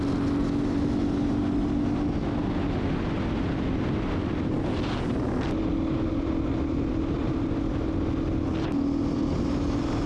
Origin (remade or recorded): recorded